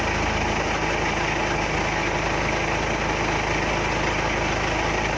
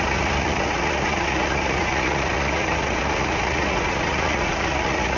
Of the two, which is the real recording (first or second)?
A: first